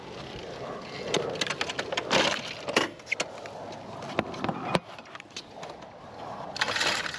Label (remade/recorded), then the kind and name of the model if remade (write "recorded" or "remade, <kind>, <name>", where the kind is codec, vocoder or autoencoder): recorded